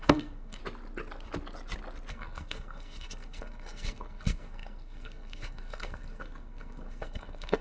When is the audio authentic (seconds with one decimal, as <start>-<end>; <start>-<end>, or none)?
0.6-2.1